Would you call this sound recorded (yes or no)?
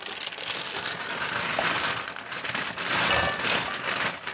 yes